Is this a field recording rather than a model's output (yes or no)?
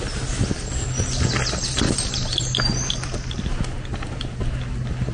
yes